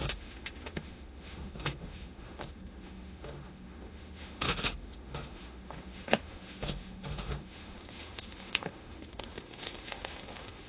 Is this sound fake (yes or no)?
yes